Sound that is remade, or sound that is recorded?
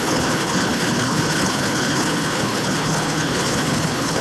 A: remade